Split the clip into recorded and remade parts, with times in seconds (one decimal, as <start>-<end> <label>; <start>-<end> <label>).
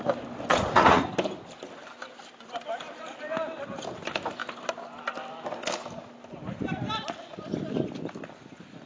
0.0-0.5 recorded; 0.5-1.1 remade; 1.1-8.9 recorded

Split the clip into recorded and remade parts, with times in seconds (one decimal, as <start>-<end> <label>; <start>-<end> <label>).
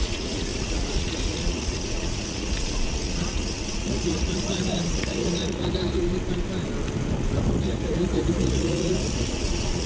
0.0-6.0 remade; 6.0-7.6 recorded; 7.6-9.9 remade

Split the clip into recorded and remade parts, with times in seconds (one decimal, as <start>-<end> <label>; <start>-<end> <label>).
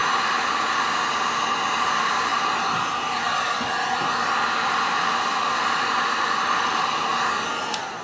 0.0-0.8 remade; 0.8-2.3 recorded; 2.3-7.1 remade; 7.1-8.0 recorded